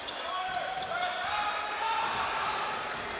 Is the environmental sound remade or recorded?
recorded